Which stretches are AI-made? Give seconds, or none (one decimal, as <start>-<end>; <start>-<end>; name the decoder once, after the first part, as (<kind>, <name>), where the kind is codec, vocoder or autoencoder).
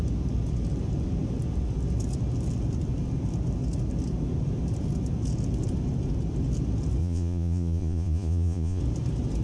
7.0-8.8 (vocoder, Vocos)